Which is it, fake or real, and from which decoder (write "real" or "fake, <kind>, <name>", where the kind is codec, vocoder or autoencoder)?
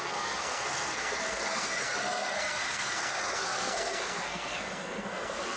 fake, codec, SNAC